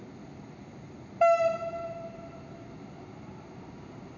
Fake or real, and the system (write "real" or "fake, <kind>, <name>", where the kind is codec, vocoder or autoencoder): real